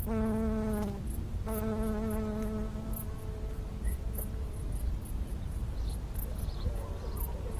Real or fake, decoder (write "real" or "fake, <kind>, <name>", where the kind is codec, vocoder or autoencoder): real